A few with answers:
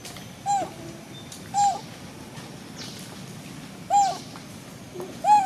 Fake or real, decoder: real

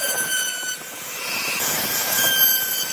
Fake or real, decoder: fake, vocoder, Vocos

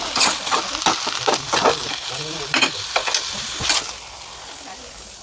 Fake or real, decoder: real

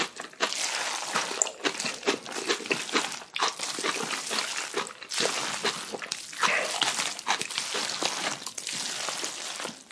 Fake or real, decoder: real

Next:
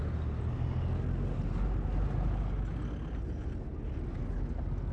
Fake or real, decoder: real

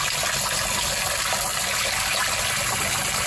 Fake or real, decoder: real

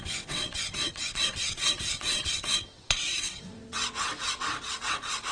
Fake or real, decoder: fake, vocoder, WaveNeXt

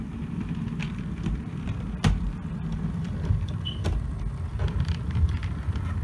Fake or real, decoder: fake, vocoder, BigVGAN v2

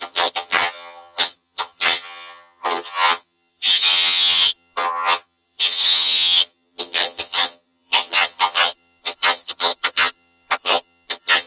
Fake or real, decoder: fake, vocoder, HiFi-GAN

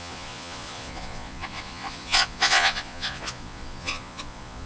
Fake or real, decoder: fake, vocoder, Vocos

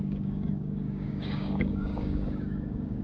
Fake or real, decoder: fake, codec, DAC